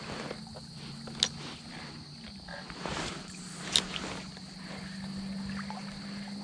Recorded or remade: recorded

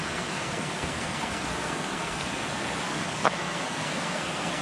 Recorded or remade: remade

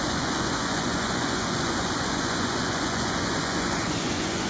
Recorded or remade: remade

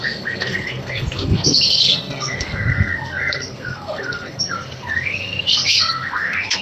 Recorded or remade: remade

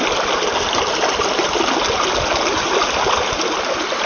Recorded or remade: recorded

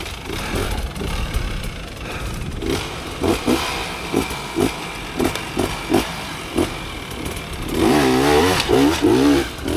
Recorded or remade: recorded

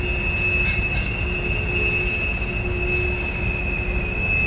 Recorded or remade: recorded